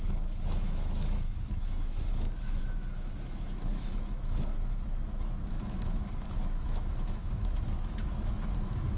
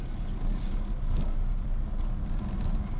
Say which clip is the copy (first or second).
first